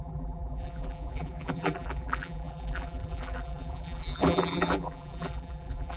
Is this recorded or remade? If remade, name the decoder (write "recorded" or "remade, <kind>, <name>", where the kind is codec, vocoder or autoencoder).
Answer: remade, vocoder, BigVGAN v2